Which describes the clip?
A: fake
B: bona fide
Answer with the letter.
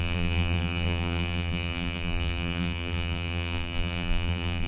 A